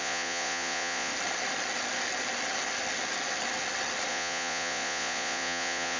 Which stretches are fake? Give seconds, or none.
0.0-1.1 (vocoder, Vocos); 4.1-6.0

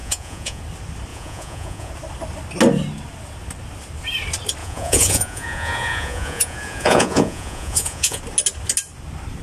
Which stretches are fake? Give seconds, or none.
0.0-0.6 (vocoder, Vocos); 1.1-1.9; 4.6-8.2

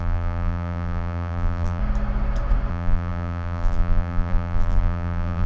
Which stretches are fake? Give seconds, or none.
0.0-1.8 (vocoder, BigVGAN v2); 2.7-5.5

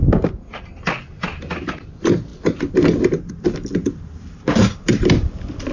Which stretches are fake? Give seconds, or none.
none

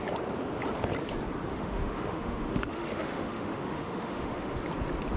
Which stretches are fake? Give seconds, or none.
1.5-4.6 (autoencoder, DAC-VAE)

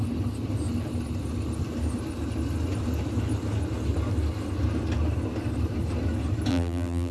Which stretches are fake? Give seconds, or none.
6.5-7.1 (vocoder, BigVGAN v2)